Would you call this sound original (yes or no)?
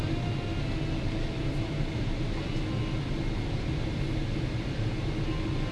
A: yes